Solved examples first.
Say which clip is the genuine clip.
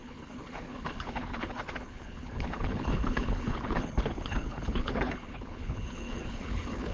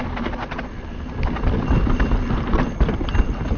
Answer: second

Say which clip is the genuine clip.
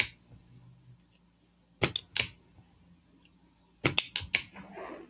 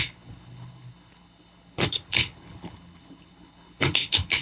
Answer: first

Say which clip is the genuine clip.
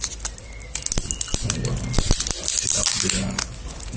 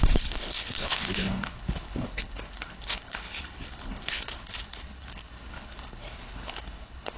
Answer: first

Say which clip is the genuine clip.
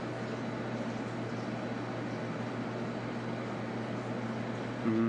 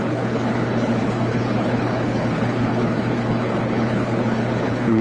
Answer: first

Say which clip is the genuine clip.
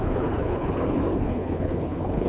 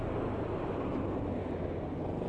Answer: second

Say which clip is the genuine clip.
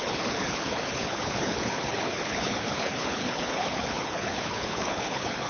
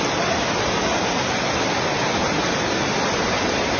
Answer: second